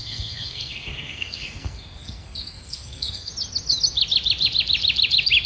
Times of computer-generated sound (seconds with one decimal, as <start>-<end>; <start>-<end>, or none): 0.0-3.3